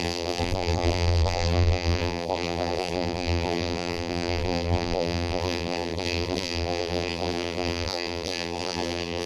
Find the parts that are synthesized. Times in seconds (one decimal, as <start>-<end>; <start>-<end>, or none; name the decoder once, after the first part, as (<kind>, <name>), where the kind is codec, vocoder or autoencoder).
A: 0.0-9.3 (vocoder, BigVGAN v2)